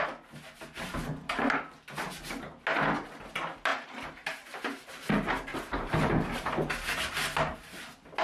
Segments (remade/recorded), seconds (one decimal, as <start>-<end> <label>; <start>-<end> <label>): 0.0-3.7 recorded; 3.7-4.9 remade; 4.9-5.5 recorded; 5.5-6.5 remade; 6.5-8.2 recorded